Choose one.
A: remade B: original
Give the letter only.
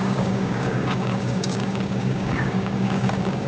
A